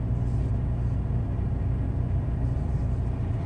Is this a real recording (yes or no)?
yes